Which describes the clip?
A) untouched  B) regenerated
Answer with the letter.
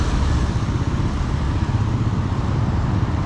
A